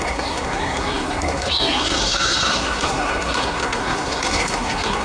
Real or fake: fake